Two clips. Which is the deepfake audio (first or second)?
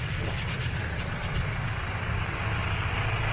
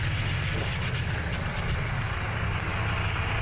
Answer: first